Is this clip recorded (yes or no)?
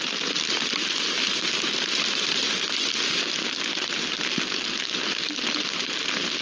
yes